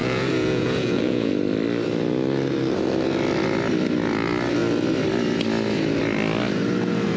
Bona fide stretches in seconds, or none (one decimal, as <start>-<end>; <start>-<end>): 1.3-7.2